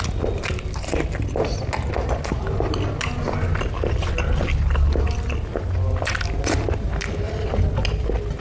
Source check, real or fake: real